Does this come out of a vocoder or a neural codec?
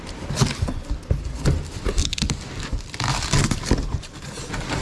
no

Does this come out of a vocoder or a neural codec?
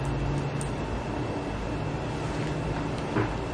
no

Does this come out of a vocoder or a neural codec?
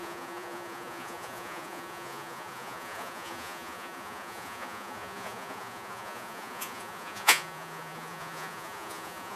yes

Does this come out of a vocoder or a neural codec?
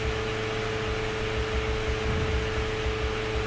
no